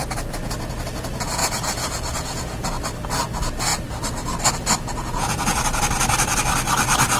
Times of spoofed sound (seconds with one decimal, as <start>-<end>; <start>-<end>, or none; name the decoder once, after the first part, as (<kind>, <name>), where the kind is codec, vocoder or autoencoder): 1.4-2.7 (vocoder, Vocos); 5.0-5.8